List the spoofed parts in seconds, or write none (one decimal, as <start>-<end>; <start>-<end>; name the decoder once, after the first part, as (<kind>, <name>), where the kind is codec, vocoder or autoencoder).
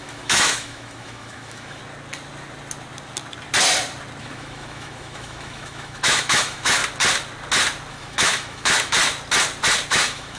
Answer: 0.0-1.8 (autoencoder, DAC-VAE); 4.2-6.8; 7.9-9.0; 9.9-10.4